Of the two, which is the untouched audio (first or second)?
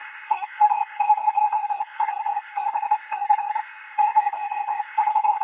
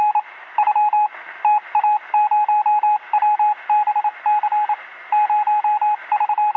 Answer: second